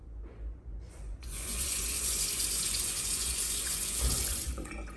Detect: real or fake fake